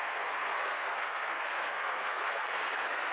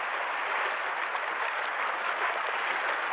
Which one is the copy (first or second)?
first